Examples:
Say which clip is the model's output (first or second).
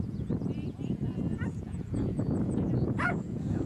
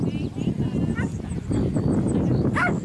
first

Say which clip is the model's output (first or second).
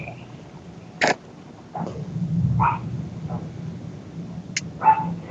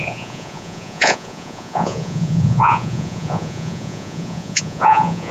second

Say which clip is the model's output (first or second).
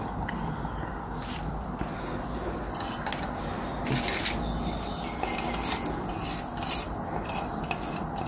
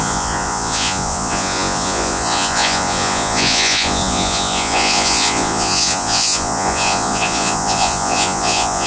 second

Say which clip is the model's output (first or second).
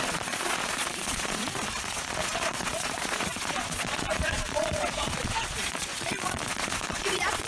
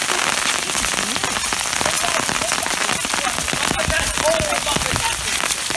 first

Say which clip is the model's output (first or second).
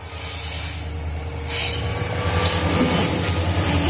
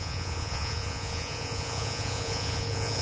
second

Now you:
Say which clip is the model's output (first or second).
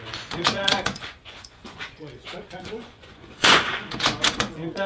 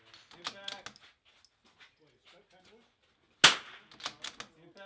first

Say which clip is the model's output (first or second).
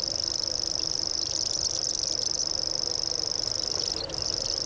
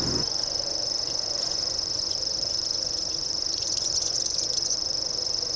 second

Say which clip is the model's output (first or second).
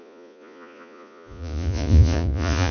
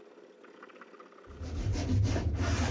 first